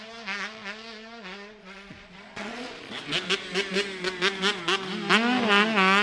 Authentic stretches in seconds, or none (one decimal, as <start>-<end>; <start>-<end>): 0.0-1.6; 2.9-6.0